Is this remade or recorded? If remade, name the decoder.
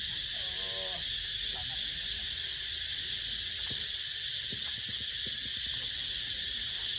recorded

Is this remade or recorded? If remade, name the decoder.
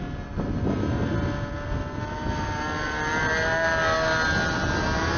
recorded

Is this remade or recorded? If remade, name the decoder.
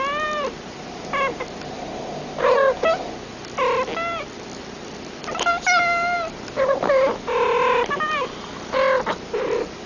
recorded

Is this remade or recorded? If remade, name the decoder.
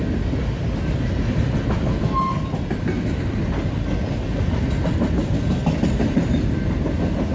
recorded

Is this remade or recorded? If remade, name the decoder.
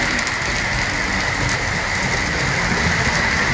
recorded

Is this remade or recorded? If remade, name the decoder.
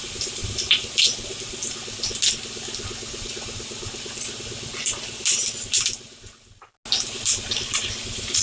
recorded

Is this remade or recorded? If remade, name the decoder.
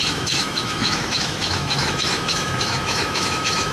remade, autoencoder, DAC-VAE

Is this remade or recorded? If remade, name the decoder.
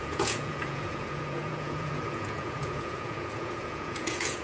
remade, vocoder, Vocos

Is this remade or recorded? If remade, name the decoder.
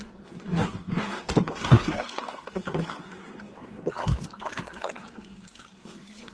remade, codec, SNAC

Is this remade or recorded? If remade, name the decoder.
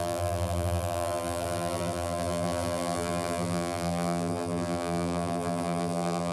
remade, vocoder, BigVGAN v2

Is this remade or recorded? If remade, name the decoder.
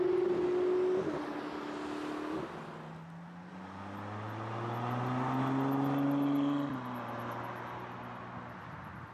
recorded